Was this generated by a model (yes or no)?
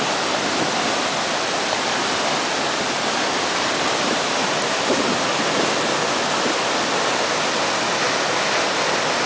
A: no